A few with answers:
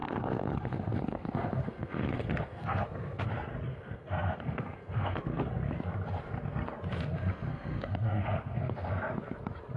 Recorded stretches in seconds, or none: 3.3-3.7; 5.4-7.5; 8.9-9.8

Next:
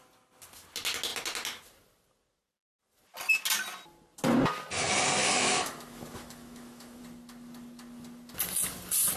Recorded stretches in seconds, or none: 0.0-5.2; 7.0-9.2